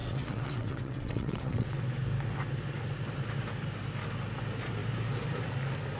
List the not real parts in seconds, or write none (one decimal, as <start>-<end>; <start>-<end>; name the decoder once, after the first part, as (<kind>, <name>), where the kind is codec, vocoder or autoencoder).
0.0-1.8 (vocoder, WaveNeXt)